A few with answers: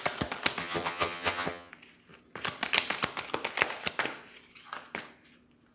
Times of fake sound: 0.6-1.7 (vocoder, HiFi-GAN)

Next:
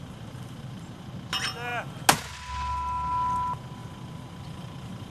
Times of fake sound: 0.0-1.1 (vocoder, BigVGAN v2); 3.8-5.1

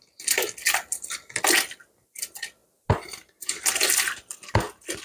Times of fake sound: none